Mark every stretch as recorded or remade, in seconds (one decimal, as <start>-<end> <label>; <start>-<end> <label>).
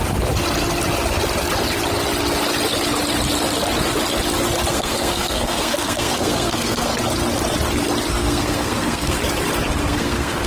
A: 0.0-4.7 recorded; 4.7-6.9 remade; 6.9-8.1 recorded; 8.1-9.2 remade; 9.2-9.8 recorded; 9.8-10.5 remade